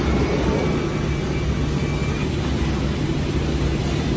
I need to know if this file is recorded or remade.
recorded